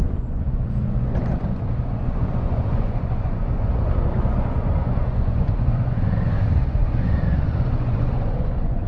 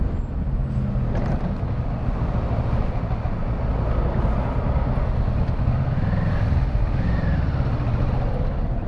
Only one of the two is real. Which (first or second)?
second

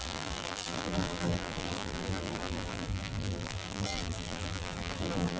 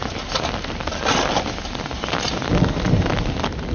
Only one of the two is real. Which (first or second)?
second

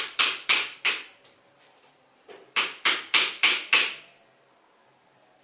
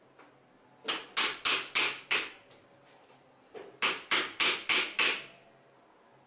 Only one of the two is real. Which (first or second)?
second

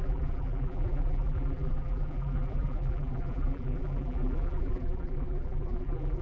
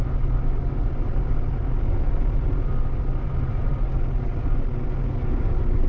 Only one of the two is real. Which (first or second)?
second